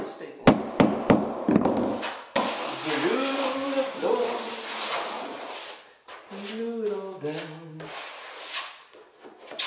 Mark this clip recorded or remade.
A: recorded